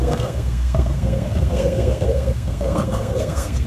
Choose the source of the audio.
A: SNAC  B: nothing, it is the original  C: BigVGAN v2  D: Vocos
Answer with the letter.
A